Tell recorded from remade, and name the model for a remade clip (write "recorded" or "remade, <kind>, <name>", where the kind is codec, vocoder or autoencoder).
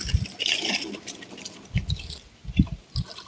recorded